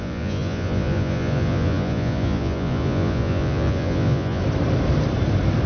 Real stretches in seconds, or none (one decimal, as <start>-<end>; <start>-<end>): 4.4-5.7